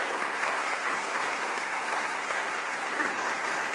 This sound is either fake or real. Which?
fake